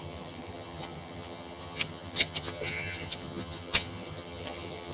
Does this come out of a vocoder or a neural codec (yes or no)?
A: yes